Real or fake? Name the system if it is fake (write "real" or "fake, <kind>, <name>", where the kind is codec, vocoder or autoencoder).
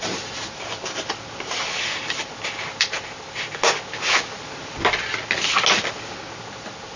real